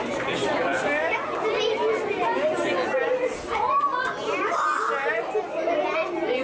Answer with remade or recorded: recorded